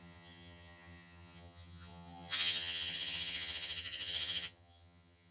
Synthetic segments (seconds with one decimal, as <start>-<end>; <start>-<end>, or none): 0.0-5.3

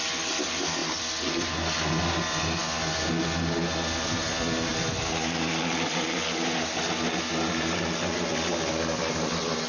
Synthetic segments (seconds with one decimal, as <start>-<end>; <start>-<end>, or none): none

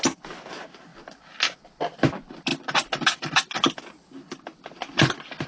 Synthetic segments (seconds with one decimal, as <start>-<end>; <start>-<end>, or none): none